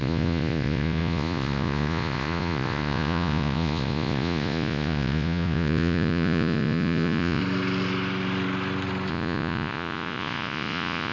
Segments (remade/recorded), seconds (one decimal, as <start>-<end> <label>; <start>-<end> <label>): 0.0-7.4 remade; 7.4-9.1 recorded; 9.1-11.1 remade